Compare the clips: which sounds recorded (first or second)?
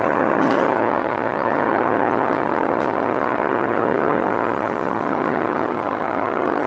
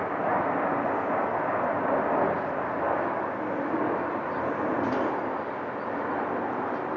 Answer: second